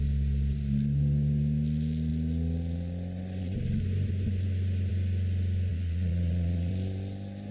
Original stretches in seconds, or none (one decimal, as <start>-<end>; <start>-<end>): 0.0-5.7; 6.7-7.5